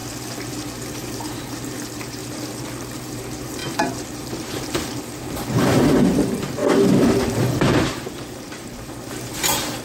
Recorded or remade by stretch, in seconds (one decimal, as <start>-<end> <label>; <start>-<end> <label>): 0.0-0.9 recorded; 0.9-2.2 remade; 2.2-2.8 recorded; 2.8-6.6 remade; 6.6-7.5 recorded; 7.5-9.8 remade